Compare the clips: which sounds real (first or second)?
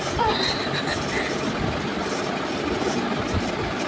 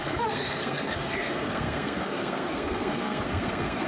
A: first